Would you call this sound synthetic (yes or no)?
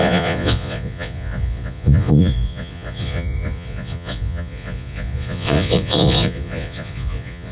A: yes